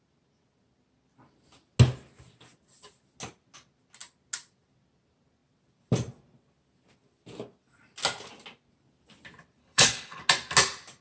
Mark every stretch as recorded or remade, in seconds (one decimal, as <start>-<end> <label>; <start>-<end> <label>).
0.0-9.6 recorded; 9.6-10.2 remade; 10.2-11.0 recorded